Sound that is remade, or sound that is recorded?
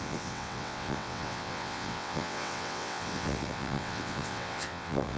remade